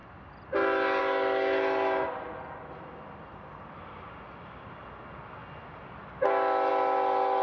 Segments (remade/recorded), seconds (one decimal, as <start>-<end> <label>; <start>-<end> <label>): 0.0-7.4 recorded